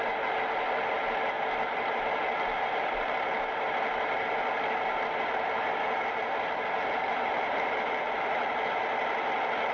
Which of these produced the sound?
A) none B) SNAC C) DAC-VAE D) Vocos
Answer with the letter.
A